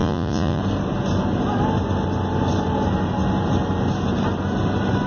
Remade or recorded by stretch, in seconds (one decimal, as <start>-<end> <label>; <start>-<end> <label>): 0.0-0.6 remade; 0.6-5.1 recorded